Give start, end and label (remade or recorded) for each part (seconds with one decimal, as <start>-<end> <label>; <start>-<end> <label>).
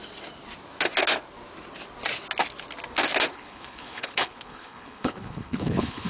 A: 0.0-3.3 recorded; 3.3-6.1 remade